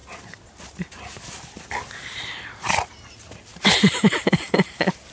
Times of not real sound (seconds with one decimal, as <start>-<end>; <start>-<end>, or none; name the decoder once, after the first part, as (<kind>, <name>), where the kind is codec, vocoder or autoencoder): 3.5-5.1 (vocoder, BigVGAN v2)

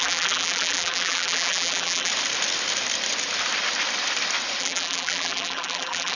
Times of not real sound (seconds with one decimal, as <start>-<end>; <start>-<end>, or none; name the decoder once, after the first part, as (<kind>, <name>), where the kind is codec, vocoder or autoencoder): 0.0-2.1 (vocoder, BigVGAN v2); 4.6-6.2

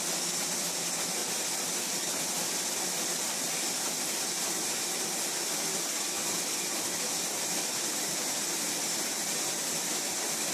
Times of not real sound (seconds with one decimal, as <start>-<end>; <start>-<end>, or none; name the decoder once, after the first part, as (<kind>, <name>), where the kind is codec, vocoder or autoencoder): 2.4-3.4 (vocoder, BigVGAN v2); 7.6-8.2

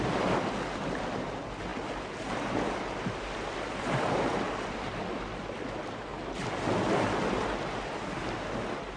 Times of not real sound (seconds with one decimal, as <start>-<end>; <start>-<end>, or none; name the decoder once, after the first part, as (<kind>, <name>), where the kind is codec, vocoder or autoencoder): none